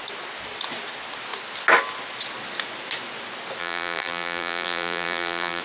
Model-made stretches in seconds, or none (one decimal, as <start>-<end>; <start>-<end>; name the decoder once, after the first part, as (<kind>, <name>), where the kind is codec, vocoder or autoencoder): 3.6-5.6 (vocoder, BigVGAN v2)